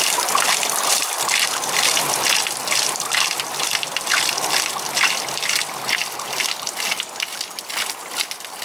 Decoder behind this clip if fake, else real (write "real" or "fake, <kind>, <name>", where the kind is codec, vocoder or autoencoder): real